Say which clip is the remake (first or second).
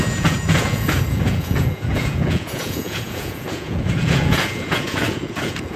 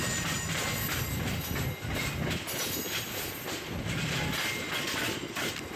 first